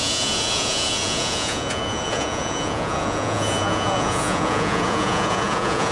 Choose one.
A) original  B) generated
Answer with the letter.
B